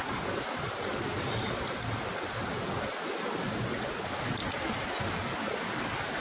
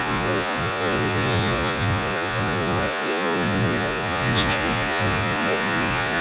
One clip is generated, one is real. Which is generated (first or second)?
second